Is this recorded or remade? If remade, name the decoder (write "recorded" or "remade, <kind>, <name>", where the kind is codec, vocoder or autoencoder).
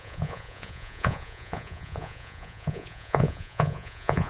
remade, vocoder, Vocos